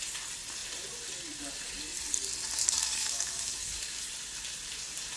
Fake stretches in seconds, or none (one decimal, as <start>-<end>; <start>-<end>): 2.6-4.1